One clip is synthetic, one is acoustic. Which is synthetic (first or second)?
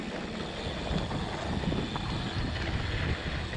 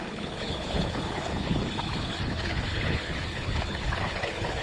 second